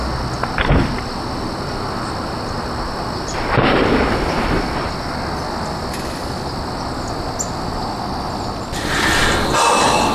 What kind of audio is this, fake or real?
real